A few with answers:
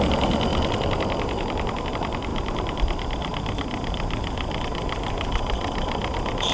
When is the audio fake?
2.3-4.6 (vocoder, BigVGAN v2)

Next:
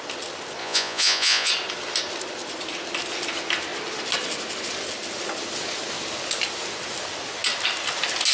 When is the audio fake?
0.6-1.5 (vocoder, Vocos)

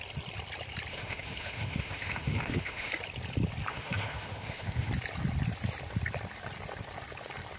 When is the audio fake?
0.9-2.9 (autoencoder, DAC-VAE); 3.7-4.9

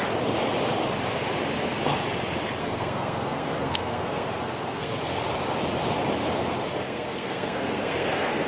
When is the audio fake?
2.6-5.0 (codec, SNAC); 6.7-8.5

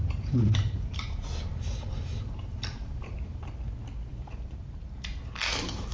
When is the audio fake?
0.0-3.5 (vocoder, BigVGAN v2); 4.1-5.3

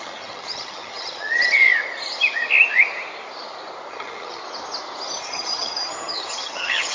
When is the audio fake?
0.0-1.6 (vocoder, HiFi-GAN); 3.9-4.4; 5.2-6.9

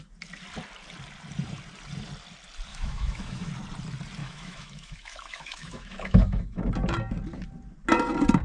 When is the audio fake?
2.7-3.5 (autoencoder, DAC-VAE); 4.2-6.7